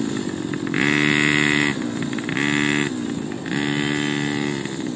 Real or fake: real